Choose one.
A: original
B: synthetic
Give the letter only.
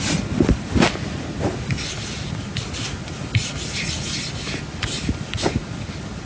A